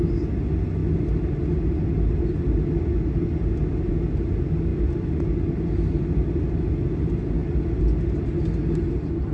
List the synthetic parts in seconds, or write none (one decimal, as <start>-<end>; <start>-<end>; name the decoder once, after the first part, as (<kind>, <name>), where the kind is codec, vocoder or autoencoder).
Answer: none